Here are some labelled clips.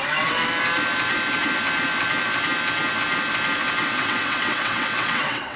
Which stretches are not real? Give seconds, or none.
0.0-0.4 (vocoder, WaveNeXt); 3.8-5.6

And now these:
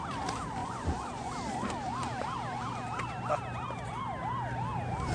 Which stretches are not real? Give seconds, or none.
0.6-1.3 (vocoder, Vocos)

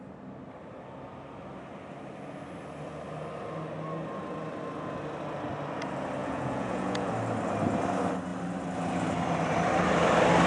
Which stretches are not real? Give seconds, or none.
6.2-7.1 (vocoder, Vocos)

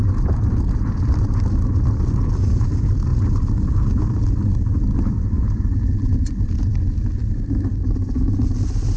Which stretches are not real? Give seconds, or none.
none

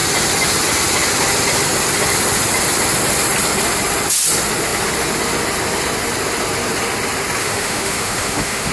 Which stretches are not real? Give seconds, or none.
7.4-8.7 (autoencoder, DAC-VAE)